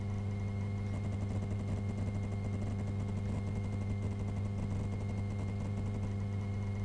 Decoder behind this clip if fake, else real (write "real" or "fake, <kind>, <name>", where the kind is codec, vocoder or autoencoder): real